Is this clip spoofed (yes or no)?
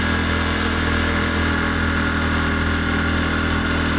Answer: no